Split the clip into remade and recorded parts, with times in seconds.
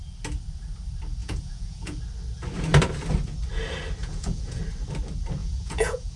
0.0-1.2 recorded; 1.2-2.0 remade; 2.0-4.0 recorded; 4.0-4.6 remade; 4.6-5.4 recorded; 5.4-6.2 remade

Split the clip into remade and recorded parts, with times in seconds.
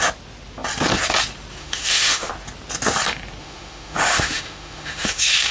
0.0-1.6 recorded; 1.6-2.3 remade; 2.3-3.4 recorded; 3.4-5.5 remade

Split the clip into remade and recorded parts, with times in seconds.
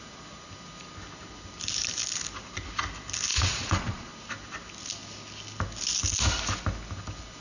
0.0-3.3 recorded; 3.3-4.1 remade; 4.1-7.4 recorded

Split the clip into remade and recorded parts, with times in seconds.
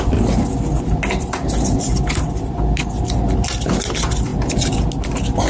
0.0-5.5 recorded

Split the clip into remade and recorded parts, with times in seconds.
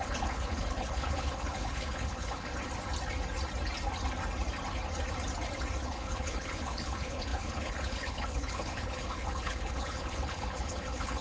0.0-2.5 remade; 2.5-5.8 recorded; 5.8-11.2 remade